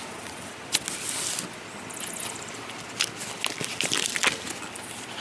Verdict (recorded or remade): recorded